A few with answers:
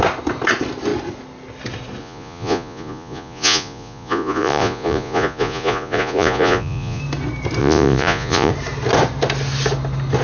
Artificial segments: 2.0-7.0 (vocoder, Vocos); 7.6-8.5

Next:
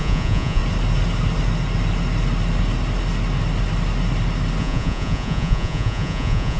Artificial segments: 0.0-0.6 (vocoder, Vocos); 4.6-6.6

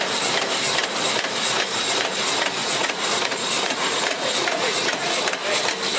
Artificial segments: 2.6-5.2 (vocoder, Vocos)